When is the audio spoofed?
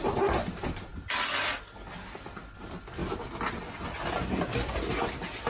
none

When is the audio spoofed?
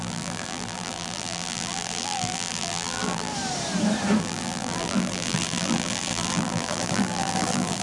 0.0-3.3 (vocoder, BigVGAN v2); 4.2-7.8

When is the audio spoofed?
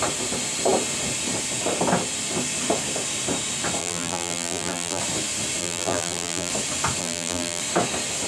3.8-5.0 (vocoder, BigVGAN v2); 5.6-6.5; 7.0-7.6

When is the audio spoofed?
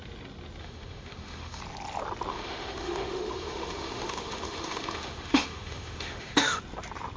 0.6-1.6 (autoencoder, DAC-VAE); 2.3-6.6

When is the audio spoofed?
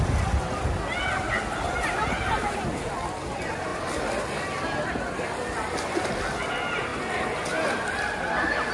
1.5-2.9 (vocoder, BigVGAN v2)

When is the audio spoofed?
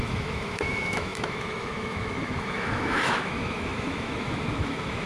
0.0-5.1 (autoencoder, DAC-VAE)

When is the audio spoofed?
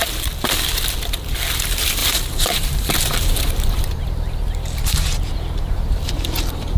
2.0-6.1 (vocoder, BigVGAN v2)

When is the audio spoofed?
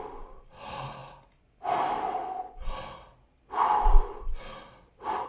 none